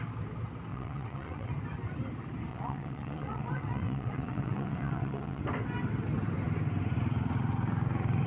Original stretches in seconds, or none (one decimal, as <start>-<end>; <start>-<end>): 0.0-0.7; 1.5-2.5; 5.4-8.3